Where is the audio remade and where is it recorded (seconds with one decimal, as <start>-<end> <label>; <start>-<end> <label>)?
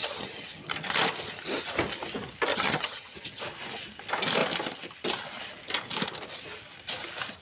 0.0-0.7 remade; 0.7-2.5 recorded; 2.5-3.4 remade; 3.4-7.4 recorded